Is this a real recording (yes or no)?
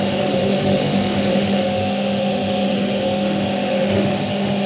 no